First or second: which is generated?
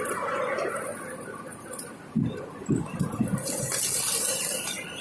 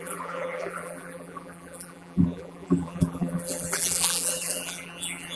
second